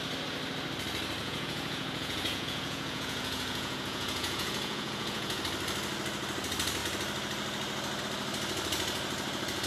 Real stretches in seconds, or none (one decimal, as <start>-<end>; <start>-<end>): 0.0-1.2; 5.4-9.7